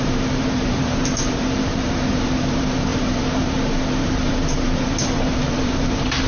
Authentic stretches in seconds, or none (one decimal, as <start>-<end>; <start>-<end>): none